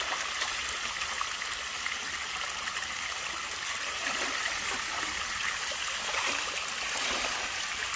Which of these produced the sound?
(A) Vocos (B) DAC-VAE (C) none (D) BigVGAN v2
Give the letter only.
C